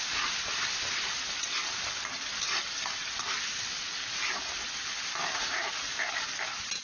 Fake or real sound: real